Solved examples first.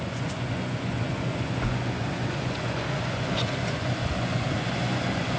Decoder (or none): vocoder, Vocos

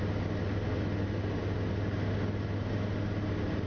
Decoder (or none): none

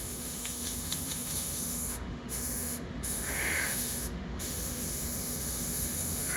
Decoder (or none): autoencoder, DAC-VAE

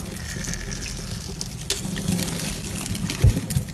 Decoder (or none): none